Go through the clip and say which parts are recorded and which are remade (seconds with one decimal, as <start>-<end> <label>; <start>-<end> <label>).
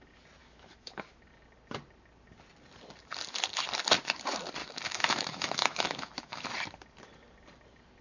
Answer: 0.0-0.4 recorded; 0.4-1.2 remade; 1.2-4.6 recorded; 4.6-6.4 remade; 6.4-8.0 recorded